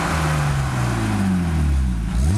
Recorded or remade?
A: recorded